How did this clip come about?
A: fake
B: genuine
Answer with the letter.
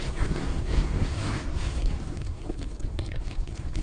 A